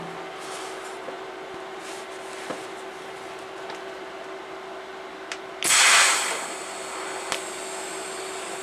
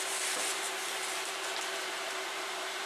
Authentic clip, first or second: first